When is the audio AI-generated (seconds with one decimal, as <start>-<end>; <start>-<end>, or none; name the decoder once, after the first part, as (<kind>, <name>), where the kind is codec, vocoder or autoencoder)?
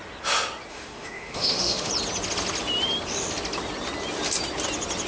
0.7-1.9 (autoencoder, DAC-VAE)